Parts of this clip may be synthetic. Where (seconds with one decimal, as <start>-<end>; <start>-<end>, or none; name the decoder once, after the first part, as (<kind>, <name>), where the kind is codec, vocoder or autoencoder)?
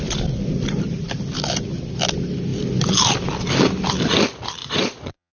4.6-5.3 (vocoder, Vocos)